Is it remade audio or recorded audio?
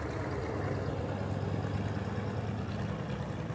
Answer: recorded